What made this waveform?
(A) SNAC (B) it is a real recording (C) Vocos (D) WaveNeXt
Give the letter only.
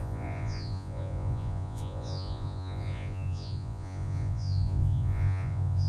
C